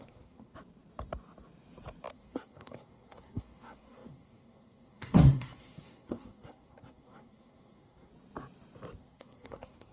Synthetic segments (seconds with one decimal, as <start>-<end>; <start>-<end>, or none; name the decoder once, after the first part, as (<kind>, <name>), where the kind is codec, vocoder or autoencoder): 0.0-0.5 (codec, SNAC); 2.1-8.1; 9.0-9.9